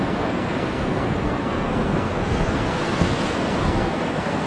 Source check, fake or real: fake